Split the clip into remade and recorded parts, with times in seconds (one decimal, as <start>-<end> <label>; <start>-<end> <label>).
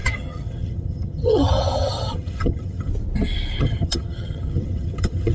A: 0.0-2.9 remade; 2.9-3.6 recorded; 3.6-5.3 remade